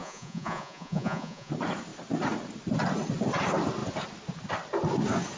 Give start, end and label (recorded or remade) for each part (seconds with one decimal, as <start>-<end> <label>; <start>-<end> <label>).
0.0-1.5 remade; 1.5-5.4 recorded